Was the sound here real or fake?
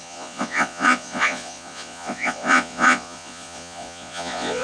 fake